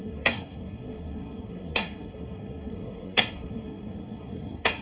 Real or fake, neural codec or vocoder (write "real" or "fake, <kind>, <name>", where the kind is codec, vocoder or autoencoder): fake, codec, SNAC